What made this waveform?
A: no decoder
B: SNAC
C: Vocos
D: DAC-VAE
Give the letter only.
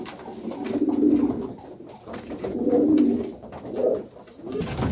A